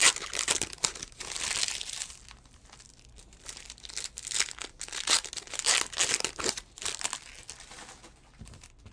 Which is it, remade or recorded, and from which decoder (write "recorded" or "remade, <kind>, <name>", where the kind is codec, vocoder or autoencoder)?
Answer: recorded